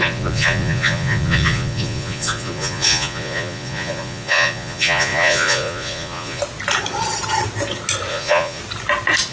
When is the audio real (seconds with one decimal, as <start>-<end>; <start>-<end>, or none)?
6.4-8.1; 8.6-9.3